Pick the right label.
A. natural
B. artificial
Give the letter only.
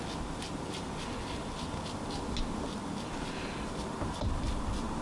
A